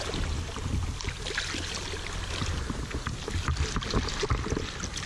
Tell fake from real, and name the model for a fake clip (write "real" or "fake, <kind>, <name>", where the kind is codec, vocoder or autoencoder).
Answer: real